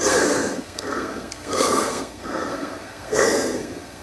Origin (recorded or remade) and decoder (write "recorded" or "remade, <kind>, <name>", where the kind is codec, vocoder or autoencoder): remade, codec, SNAC